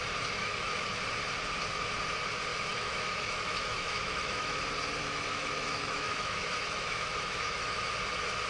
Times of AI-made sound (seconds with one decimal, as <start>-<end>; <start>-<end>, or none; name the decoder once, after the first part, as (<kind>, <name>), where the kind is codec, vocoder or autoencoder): 0.4-0.9 (autoencoder, DAC-VAE); 2.5-4.6; 5.0-7.9